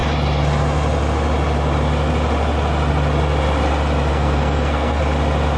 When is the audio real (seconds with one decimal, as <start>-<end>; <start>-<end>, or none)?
0.0-4.1; 5.0-5.6